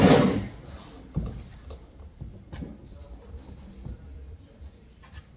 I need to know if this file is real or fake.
fake